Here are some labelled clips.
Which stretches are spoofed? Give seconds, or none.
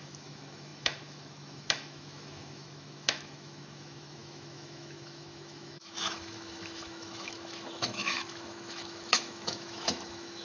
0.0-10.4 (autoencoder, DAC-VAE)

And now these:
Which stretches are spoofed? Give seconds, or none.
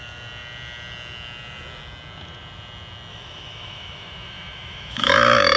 3.1-5.6 (autoencoder, DAC-VAE)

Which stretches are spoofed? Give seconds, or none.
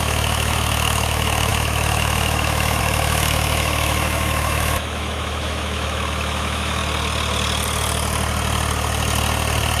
0.0-6.8 (autoencoder, DAC-VAE)